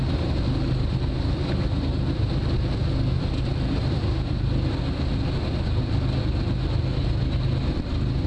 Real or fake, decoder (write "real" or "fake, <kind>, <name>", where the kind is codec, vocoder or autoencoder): real